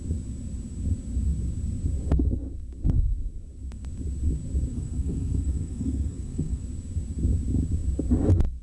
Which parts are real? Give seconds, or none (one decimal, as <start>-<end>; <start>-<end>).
0.0-4.7; 6.6-8.6